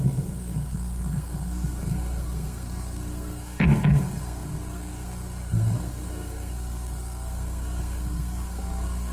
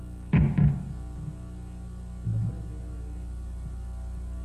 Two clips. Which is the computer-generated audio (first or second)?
first